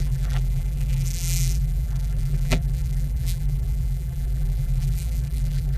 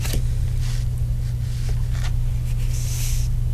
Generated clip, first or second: first